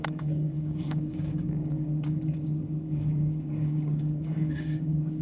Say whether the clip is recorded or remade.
remade